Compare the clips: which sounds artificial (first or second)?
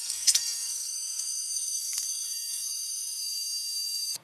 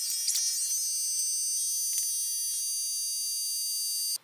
first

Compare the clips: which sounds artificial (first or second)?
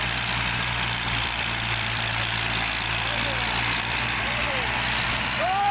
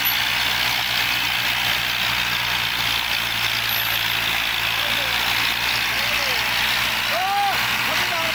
first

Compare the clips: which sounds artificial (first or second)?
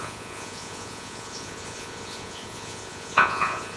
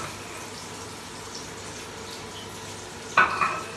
first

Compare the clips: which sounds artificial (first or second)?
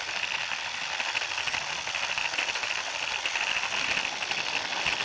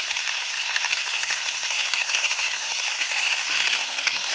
second